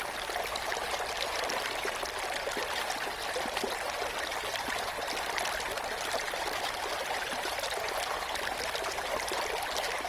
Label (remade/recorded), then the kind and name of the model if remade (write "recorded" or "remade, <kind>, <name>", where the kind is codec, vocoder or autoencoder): recorded